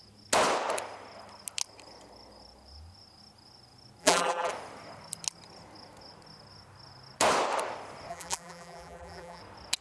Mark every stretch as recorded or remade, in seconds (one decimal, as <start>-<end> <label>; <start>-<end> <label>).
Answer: 0.0-4.0 recorded; 4.0-4.5 remade; 4.5-8.1 recorded; 8.1-9.4 remade; 9.4-9.8 recorded